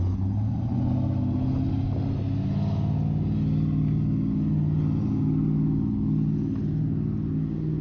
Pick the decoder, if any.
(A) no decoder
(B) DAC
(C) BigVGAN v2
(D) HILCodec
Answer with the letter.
A